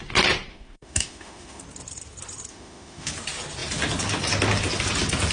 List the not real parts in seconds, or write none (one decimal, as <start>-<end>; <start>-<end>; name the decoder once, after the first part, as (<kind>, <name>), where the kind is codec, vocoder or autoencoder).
0.5-1.6 (autoencoder, DAC-VAE); 2.5-3.1